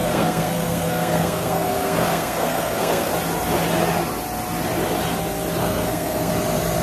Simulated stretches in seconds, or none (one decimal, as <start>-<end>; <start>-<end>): 0.0-3.1; 5.6-6.3